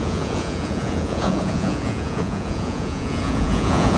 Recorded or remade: remade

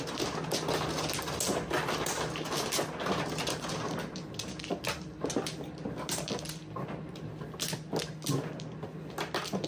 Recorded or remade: recorded